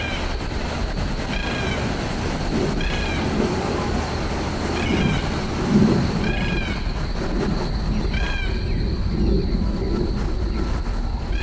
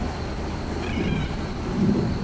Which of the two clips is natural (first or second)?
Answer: first